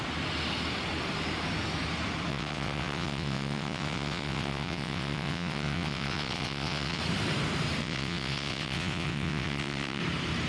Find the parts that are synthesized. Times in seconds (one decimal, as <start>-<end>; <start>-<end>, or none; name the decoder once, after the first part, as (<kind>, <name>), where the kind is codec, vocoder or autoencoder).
2.3-7.0 (vocoder, WaveNeXt); 7.8-10.0